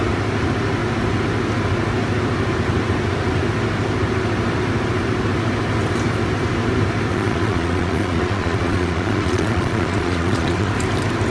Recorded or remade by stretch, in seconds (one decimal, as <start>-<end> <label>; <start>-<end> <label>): 0.0-7.1 recorded; 7.1-10.7 remade; 10.7-11.3 recorded